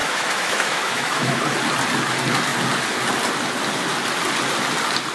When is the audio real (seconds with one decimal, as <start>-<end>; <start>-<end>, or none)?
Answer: 1.4-5.1